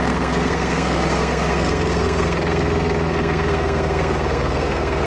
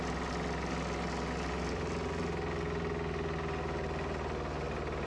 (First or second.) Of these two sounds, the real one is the second